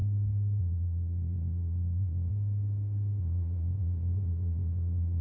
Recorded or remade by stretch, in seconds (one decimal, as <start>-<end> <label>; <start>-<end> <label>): 0.0-0.6 recorded; 0.6-2.3 remade; 2.3-3.2 recorded; 3.2-5.2 remade